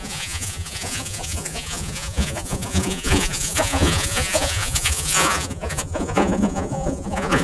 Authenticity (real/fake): fake